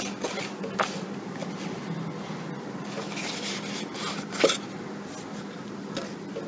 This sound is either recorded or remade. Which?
recorded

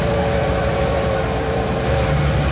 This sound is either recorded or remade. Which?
remade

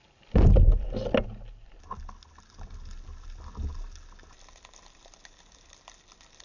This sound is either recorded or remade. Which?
recorded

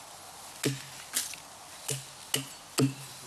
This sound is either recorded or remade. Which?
recorded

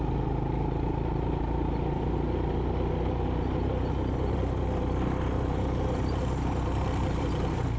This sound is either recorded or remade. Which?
recorded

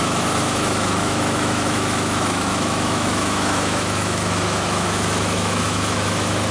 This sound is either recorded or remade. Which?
remade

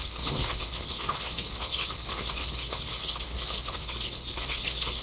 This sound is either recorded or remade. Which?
remade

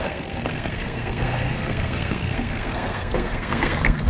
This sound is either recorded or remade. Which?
remade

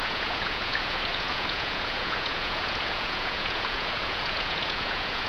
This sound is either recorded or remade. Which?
remade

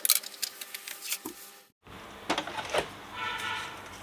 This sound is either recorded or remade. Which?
recorded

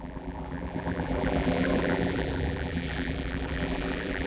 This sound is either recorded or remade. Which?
remade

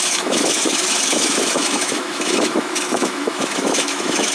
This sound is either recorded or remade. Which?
remade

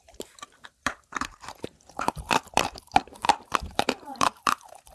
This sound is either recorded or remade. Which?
remade